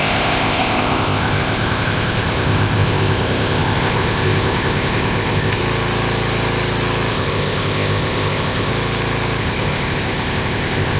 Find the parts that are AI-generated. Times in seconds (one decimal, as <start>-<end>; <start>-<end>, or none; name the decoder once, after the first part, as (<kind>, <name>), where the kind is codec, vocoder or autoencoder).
0.0-5.6 (codec, ZipCodec); 7.1-8.7; 9.4-11.0